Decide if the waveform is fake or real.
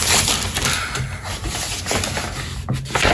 real